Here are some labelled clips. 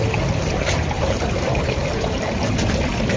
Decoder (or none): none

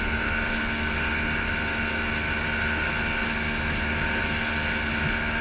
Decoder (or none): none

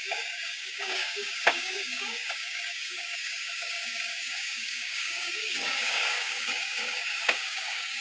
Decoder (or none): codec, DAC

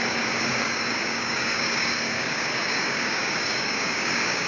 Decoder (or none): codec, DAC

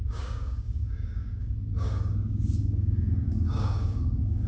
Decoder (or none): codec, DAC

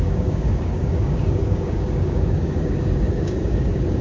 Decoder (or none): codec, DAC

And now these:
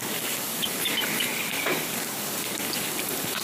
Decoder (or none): codec, DAC